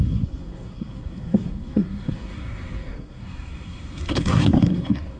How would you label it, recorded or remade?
remade